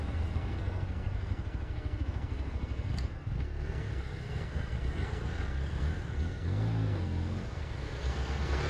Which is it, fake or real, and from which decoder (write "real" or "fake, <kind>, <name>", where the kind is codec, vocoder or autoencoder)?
fake, codec, SNAC